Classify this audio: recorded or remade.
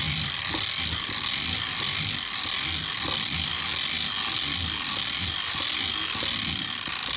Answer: recorded